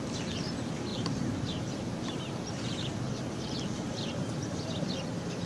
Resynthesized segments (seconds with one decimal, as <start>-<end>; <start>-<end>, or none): 0.9-4.2